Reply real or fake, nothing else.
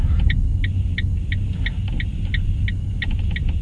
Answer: real